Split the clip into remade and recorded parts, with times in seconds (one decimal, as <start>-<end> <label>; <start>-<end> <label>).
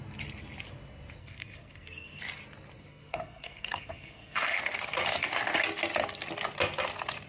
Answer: 0.0-1.2 recorded; 1.2-2.2 remade; 2.2-2.9 recorded; 2.9-4.6 remade; 4.6-7.3 recorded